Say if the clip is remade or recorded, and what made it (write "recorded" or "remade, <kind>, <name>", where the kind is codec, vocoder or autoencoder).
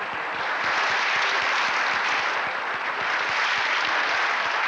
recorded